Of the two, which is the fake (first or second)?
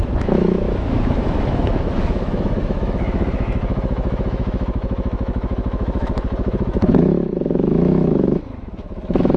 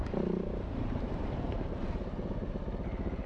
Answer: first